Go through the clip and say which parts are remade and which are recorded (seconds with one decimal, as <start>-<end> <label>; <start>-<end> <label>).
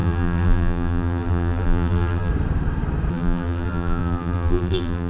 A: 0.0-2.3 remade; 2.3-3.1 recorded; 3.1-5.1 remade